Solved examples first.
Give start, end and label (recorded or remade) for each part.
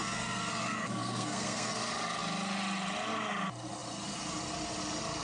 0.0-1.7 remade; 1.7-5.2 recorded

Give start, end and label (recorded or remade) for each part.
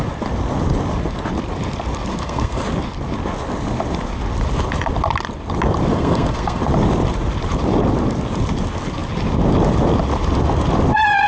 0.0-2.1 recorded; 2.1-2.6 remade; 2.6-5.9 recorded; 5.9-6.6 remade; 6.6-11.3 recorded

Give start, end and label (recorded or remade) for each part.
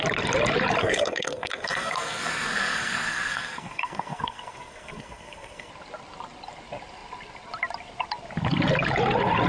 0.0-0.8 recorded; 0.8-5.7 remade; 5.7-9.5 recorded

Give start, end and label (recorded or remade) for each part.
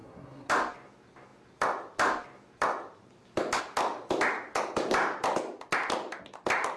0.0-0.5 remade; 0.5-6.8 recorded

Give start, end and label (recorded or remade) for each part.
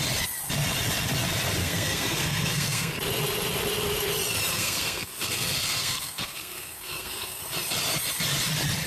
0.0-1.6 recorded; 1.6-3.0 remade; 3.0-4.5 recorded; 4.5-7.4 remade; 7.4-8.9 recorded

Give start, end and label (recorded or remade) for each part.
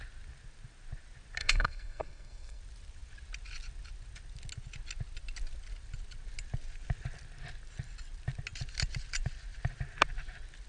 0.0-1.4 recorded; 1.4-2.6 remade; 2.6-10.7 recorded